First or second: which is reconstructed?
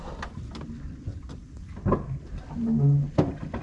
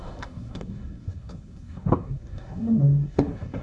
second